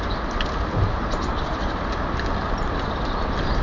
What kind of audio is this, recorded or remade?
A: recorded